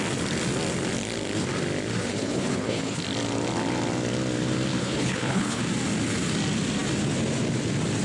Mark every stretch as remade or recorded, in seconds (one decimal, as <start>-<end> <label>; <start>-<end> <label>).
0.0-2.0 recorded; 2.0-3.0 remade; 3.0-4.8 recorded; 4.8-5.6 remade; 5.6-8.0 recorded